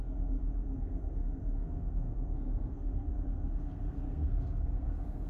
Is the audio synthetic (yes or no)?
yes